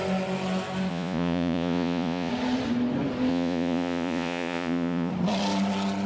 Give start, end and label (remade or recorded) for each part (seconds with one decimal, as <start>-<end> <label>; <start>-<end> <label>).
0.0-0.9 recorded; 0.9-2.3 remade; 2.3-3.3 recorded; 3.3-5.1 remade; 5.1-6.1 recorded